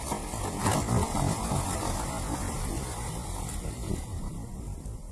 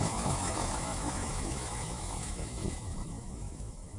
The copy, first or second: second